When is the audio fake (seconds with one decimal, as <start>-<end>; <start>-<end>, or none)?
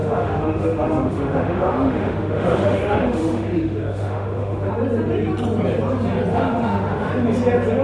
0.0-4.7; 6.3-7.1